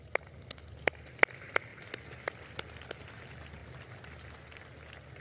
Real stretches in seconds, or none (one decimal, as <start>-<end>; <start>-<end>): 0.0-5.2